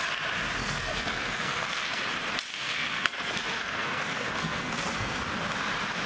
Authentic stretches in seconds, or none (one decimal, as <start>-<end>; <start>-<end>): 0.0-0.6; 2.0-2.5; 5.2-6.1